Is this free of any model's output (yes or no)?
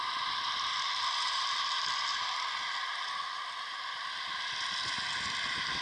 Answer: yes